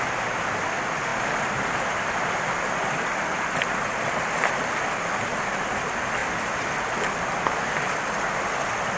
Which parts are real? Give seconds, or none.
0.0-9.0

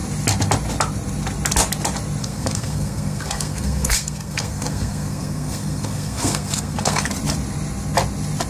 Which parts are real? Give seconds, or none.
0.0-2.2; 7.1-8.5

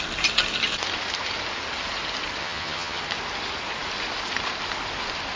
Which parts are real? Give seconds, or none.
0.0-2.4; 3.0-5.4

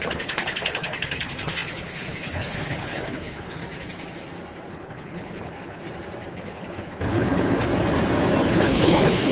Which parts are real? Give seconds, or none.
3.6-4.7; 5.8-6.3; 7.7-8.4

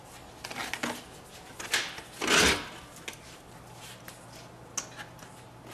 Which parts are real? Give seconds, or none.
0.0-5.7

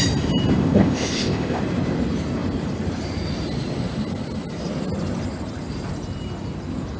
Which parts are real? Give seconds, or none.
0.0-0.6; 1.6-7.0

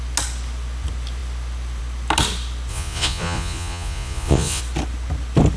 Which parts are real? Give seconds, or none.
0.0-2.7; 4.6-5.6

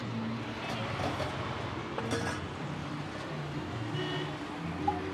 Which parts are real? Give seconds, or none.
0.0-0.8; 1.8-2.8; 3.6-5.1